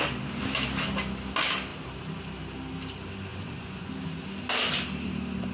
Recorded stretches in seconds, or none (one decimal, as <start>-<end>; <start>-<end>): 0.0-3.3; 3.9-5.5